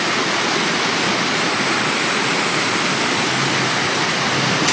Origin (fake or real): real